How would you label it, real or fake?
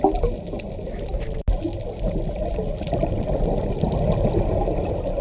real